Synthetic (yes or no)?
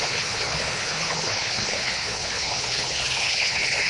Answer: yes